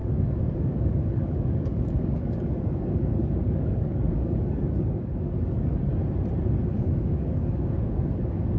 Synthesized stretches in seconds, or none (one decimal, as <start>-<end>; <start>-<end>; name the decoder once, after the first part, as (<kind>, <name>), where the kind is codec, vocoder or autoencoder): 0.0-5.9 (codec, DAC); 6.7-8.6